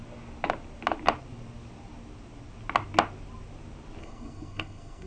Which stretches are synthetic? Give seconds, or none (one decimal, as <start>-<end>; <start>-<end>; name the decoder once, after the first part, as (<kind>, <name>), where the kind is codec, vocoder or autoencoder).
4.0-5.1 (codec, SNAC)